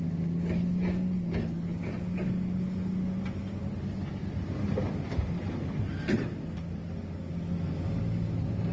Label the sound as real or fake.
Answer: real